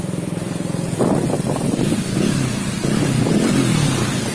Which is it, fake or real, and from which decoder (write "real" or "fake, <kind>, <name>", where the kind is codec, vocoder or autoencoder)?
real